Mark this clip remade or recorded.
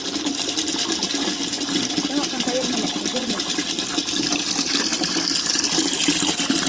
recorded